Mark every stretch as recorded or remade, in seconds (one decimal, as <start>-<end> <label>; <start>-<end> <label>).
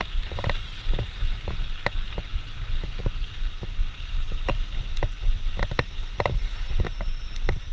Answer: 0.0-7.7 recorded